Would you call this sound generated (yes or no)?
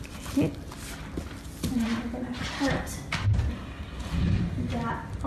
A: no